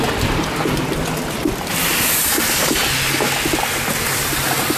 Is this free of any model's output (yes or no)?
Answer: yes